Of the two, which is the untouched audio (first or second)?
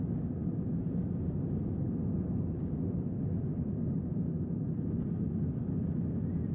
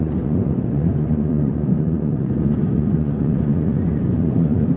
first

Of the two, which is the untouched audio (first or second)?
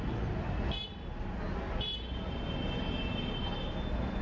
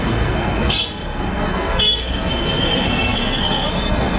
first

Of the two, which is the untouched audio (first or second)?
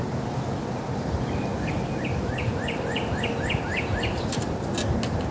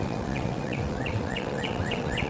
first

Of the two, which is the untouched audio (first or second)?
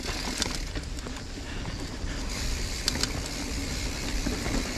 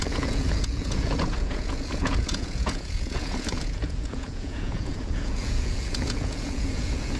first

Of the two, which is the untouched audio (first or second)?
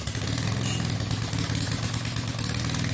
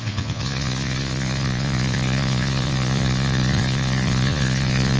first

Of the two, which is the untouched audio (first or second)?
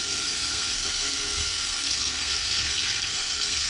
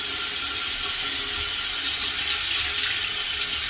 second